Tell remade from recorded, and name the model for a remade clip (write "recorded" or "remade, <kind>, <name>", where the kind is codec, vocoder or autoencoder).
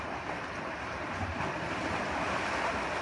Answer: recorded